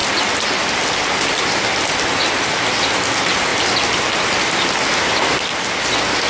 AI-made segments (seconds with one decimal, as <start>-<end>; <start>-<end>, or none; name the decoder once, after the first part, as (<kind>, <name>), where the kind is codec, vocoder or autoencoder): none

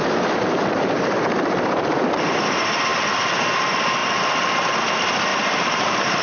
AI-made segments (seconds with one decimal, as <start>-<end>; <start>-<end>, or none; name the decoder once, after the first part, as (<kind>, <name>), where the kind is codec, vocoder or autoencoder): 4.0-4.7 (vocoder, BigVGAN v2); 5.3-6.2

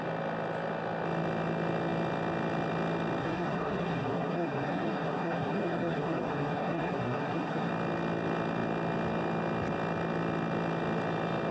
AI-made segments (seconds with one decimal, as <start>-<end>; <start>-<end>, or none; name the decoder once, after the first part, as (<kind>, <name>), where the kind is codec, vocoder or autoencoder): 3.2-7.7 (codec, SNAC)

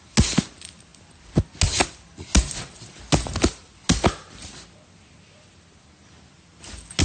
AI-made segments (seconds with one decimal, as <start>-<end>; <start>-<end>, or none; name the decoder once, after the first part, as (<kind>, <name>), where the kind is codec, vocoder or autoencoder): none

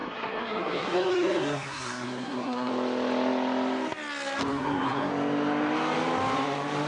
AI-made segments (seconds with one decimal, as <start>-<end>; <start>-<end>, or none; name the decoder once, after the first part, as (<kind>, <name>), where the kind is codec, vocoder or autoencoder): 0.0-2.7 (codec, SNAC); 4.5-5.1